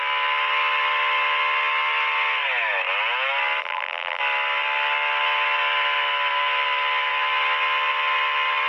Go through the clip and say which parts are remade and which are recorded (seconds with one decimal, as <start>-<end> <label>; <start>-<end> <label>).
0.0-3.6 recorded; 3.6-4.2 remade; 4.2-8.7 recorded